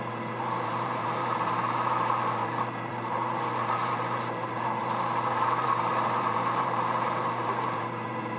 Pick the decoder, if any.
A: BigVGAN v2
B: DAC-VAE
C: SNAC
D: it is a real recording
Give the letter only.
A